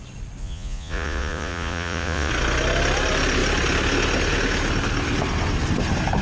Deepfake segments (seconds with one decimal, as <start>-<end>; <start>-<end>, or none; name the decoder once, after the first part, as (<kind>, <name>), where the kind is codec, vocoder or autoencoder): 0.4-2.3 (vocoder, Vocos)